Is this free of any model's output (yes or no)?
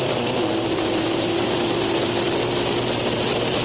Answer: no